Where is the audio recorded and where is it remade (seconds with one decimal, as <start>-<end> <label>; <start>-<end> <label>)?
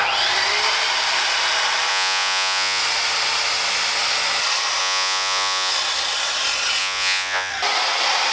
0.0-1.9 recorded; 1.9-2.8 remade; 2.8-4.8 recorded; 4.8-5.7 remade; 5.7-6.8 recorded; 6.8-7.5 remade; 7.5-8.3 recorded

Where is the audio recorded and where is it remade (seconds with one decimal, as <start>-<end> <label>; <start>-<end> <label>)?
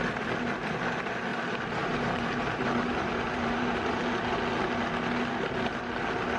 0.0-1.3 recorded; 1.3-4.0 remade; 4.0-6.4 recorded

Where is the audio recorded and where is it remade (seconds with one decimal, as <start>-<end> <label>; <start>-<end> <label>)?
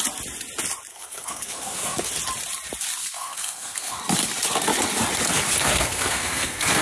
0.0-0.9 recorded; 0.9-2.1 remade; 2.1-3.0 recorded; 3.0-4.0 remade; 4.0-5.6 recorded; 5.6-6.8 remade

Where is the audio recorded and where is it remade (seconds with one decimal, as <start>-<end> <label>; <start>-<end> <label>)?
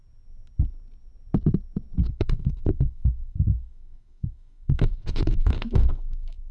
0.0-2.1 recorded; 2.1-6.5 remade